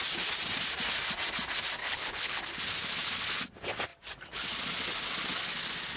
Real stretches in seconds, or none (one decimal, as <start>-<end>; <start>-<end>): 0.0-1.8; 2.4-6.0